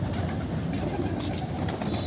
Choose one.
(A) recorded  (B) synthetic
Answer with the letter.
A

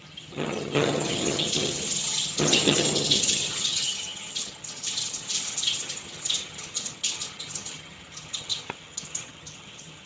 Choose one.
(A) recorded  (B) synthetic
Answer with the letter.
B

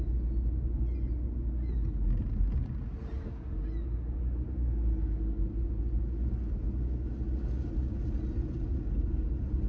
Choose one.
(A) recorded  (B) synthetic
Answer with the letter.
A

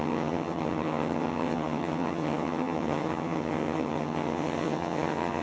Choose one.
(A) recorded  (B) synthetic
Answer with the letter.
B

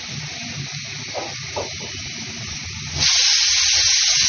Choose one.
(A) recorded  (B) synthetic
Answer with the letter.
A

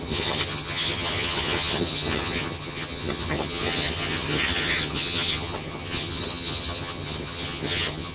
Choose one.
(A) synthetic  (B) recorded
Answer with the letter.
A